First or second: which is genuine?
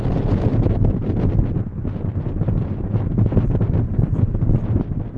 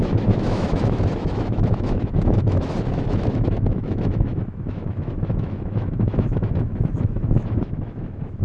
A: first